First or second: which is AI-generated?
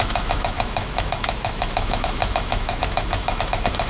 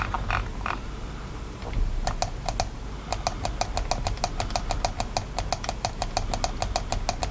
first